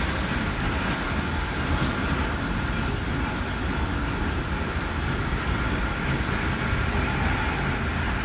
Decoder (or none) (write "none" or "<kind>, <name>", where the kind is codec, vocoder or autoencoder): none